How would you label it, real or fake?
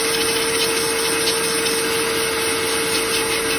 real